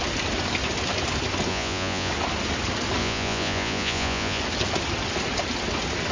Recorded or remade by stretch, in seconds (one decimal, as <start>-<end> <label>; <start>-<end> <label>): 0.0-1.5 recorded; 1.5-2.1 remade; 2.1-3.0 recorded; 3.0-4.4 remade; 4.4-6.1 recorded